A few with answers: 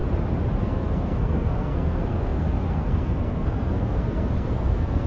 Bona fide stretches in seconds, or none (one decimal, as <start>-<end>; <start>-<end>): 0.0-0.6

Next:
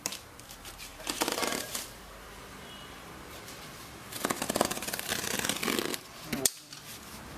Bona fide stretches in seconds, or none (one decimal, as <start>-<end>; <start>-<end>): 5.6-6.5

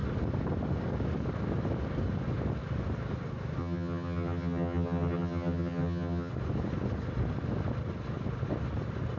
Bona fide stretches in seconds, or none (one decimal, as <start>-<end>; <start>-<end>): 0.0-3.6; 6.3-9.2

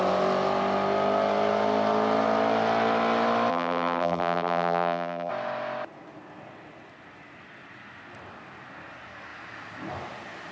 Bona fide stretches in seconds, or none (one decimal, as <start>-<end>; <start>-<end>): 0.0-3.5; 5.3-10.5